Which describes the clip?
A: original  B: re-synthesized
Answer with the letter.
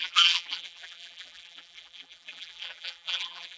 B